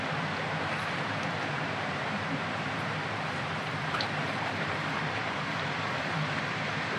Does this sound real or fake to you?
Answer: fake